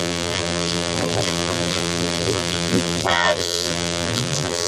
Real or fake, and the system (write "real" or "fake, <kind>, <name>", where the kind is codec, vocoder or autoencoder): fake, vocoder, BigVGAN v2